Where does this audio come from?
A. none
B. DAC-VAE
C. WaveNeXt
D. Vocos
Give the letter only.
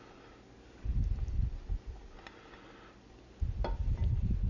A